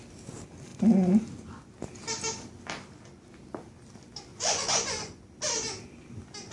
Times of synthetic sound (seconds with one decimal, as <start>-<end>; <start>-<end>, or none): 4.3-5.2